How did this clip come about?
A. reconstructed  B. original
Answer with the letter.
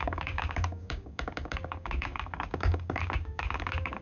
A